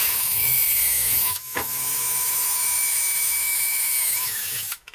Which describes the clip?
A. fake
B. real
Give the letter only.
A